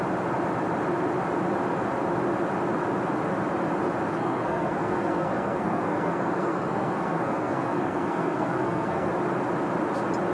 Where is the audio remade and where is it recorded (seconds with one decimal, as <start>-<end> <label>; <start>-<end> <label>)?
0.0-4.1 recorded; 4.1-9.1 remade; 9.1-10.3 recorded